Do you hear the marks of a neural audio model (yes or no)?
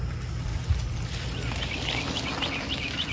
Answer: no